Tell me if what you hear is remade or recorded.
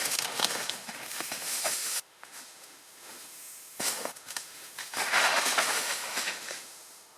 remade